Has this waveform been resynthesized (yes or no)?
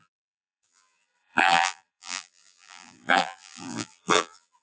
yes